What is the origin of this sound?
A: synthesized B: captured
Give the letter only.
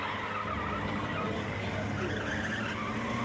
B